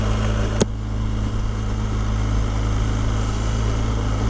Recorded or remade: recorded